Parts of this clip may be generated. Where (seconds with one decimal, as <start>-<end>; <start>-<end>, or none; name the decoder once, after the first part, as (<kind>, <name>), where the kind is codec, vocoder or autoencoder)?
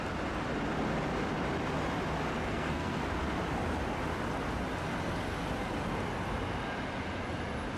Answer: 2.4-3.0 (codec, SNAC)